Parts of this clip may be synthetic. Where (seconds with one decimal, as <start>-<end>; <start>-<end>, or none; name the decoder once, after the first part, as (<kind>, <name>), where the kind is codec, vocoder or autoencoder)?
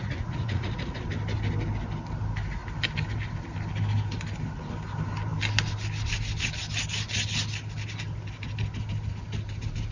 0.0-1.0 (vocoder, Vocos)